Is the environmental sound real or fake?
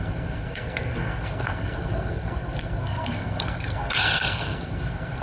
fake